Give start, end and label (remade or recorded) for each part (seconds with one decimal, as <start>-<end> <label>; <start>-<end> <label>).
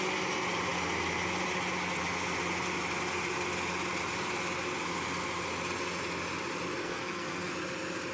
0.0-6.8 recorded; 6.8-7.5 remade; 7.5-8.1 recorded